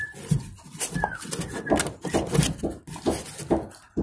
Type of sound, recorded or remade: recorded